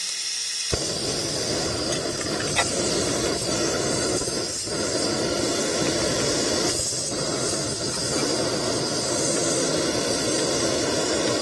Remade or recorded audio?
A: recorded